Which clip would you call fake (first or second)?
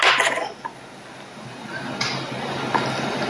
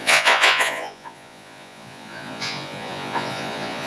second